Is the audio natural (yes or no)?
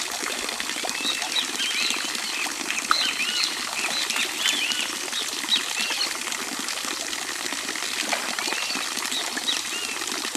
yes